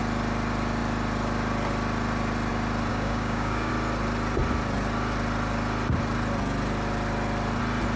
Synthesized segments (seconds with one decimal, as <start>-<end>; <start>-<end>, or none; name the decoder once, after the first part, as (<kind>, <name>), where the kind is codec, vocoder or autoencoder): 2.9-3.7 (codec, DAC)